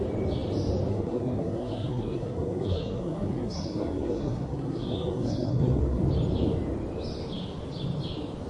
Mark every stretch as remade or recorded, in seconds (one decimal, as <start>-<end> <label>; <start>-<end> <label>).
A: 0.0-0.9 recorded; 0.9-6.0 remade; 6.0-8.5 recorded